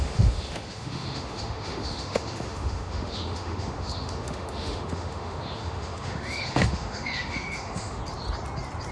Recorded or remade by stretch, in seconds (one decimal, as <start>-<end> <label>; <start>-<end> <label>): 0.0-8.0 remade; 8.0-8.9 recorded